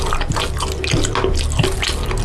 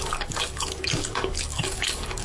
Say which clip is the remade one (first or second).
second